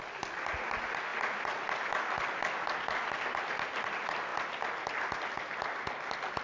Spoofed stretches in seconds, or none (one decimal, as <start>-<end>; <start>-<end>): none